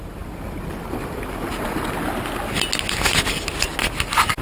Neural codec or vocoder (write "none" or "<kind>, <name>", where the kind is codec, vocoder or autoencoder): none